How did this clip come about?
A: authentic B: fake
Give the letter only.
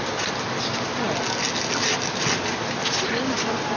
A